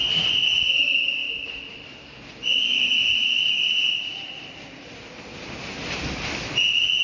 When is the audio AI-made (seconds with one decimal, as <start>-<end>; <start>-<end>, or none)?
none

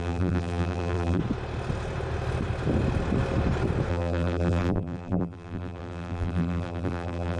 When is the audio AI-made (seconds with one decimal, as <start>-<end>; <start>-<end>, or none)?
0.0-1.2; 3.9-7.4

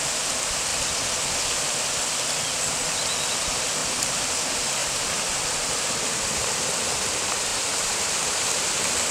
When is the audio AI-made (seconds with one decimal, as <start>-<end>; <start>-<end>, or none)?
3.8-4.3; 4.8-5.4; 7.5-8.7

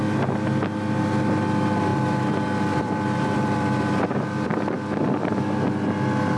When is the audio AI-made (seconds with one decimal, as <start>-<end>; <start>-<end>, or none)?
1.9-4.0

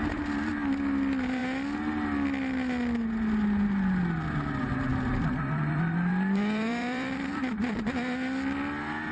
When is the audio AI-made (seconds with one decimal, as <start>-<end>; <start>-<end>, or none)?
4.9-7.8